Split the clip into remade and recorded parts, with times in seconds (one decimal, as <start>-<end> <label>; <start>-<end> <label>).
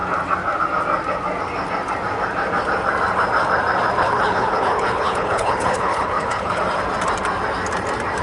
0.0-4.0 recorded; 4.0-6.6 remade; 6.6-8.2 recorded